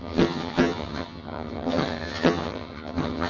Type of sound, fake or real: fake